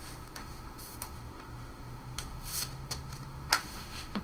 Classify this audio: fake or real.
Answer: fake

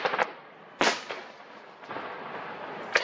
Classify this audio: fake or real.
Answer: real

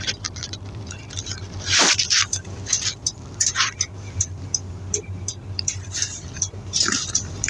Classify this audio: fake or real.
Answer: fake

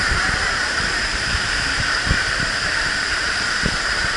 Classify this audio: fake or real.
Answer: fake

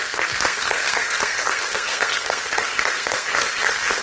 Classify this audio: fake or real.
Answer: fake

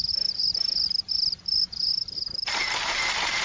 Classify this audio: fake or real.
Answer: real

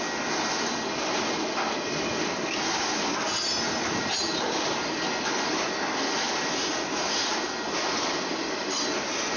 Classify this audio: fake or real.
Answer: real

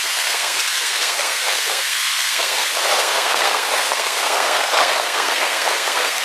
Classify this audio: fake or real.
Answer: fake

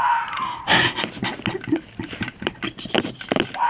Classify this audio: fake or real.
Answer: real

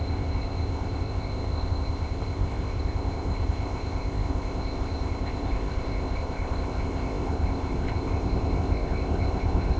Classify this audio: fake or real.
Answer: fake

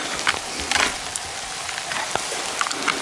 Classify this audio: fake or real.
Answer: real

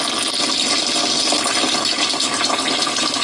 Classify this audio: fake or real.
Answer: real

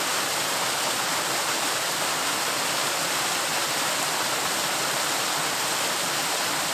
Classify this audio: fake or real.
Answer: real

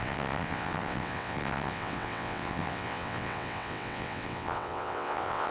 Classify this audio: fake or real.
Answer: fake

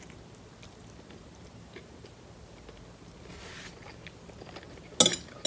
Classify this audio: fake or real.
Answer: real